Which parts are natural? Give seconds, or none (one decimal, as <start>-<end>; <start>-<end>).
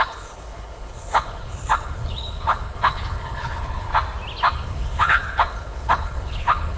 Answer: 3.9-4.5